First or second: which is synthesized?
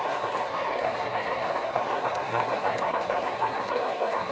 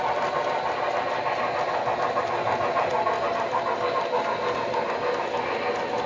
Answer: first